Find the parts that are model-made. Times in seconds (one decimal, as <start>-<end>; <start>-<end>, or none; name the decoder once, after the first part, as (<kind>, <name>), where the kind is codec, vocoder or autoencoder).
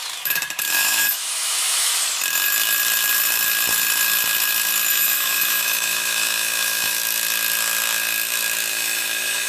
0.6-1.9 (autoencoder, DAC-VAE); 4.9-7.0; 8.7-9.5